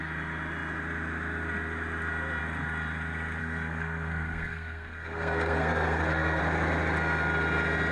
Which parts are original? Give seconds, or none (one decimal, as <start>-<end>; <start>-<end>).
0.0-3.4; 6.4-7.9